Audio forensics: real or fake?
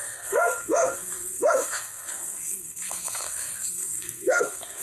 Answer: fake